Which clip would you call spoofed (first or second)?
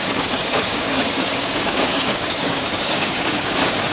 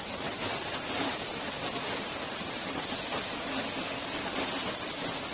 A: first